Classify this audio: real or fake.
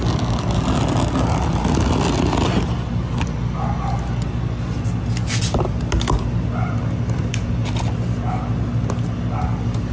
real